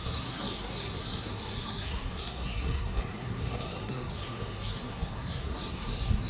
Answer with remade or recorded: remade